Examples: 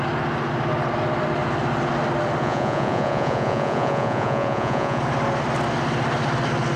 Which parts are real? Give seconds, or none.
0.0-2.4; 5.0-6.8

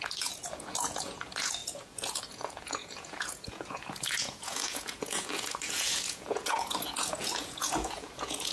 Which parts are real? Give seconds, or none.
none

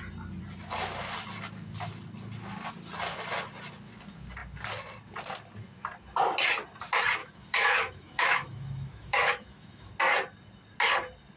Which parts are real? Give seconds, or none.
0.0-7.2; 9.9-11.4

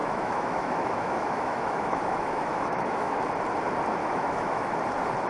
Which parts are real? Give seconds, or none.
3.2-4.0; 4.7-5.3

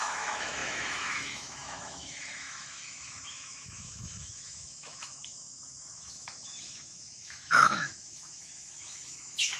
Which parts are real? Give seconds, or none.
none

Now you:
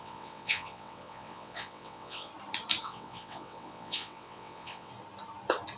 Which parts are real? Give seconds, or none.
2.3-2.8; 4.9-5.8